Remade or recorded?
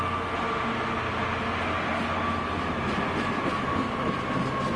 recorded